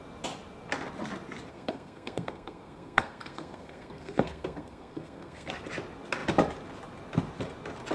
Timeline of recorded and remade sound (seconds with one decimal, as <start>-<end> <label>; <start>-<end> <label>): 0.0-1.5 recorded; 1.5-5.5 remade; 5.5-7.9 recorded